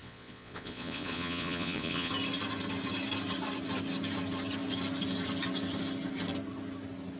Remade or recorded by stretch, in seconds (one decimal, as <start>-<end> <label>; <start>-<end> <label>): 0.0-2.1 remade; 2.1-7.2 recorded